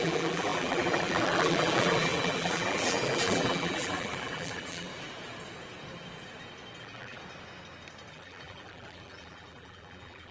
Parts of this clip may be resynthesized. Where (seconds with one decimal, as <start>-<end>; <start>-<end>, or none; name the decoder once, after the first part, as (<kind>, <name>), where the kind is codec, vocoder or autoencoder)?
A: 0.0-4.9 (vocoder, BigVGAN v2); 6.8-7.2; 8.1-10.3